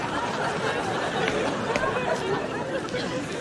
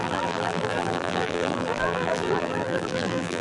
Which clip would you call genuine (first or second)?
first